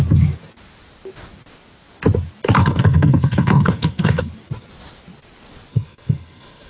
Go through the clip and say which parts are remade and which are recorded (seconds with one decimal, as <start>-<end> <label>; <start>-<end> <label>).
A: 0.0-2.6 recorded; 2.6-4.3 remade; 4.3-5.7 recorded; 5.7-6.7 remade